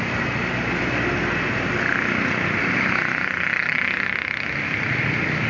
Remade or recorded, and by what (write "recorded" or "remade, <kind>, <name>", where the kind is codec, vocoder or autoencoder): recorded